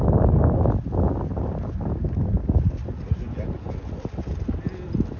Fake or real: real